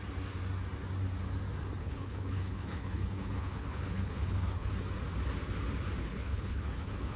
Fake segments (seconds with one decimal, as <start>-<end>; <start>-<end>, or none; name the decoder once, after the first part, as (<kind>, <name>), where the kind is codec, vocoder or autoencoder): 1.8-4.7 (codec, HILCodec); 6.0-7.2